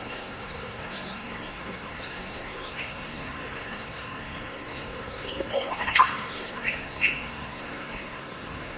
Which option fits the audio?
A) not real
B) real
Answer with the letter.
A